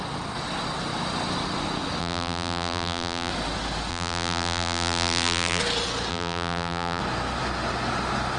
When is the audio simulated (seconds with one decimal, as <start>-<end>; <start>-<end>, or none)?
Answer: 2.0-3.3; 3.9-5.6; 6.1-7.0